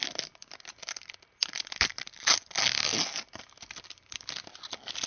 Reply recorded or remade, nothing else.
recorded